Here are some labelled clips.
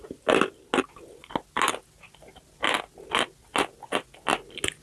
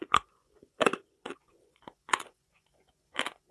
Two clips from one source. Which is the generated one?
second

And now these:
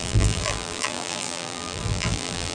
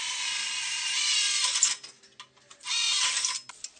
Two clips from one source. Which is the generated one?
first